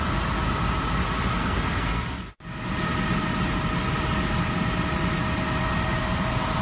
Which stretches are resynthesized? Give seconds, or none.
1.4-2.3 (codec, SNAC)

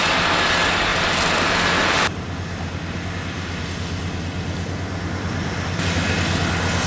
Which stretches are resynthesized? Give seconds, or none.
none

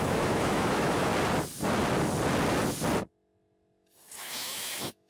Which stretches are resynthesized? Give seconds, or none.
0.0-1.1 (autoencoder, DAC-VAE); 4.2-5.1